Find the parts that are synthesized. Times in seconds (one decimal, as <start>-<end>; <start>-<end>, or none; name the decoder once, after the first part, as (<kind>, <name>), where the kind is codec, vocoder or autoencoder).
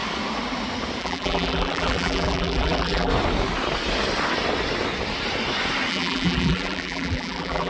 1.0-3.1 (vocoder, BigVGAN v2); 5.9-7.7